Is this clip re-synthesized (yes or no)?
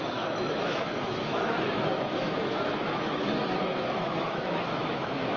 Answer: yes